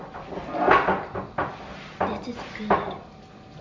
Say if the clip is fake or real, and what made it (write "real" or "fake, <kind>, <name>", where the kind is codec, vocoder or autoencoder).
real